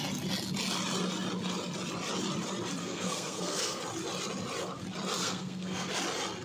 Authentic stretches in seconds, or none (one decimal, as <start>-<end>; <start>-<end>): 0.0-2.8; 3.8-5.2; 5.9-6.4